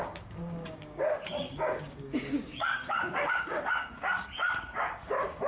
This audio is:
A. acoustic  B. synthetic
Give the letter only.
B